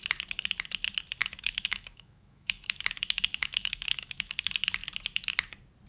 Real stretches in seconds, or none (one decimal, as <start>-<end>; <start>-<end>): 0.0-1.2; 2.8-3.4; 4.3-5.9